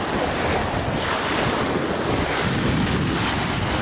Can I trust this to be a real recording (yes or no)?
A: yes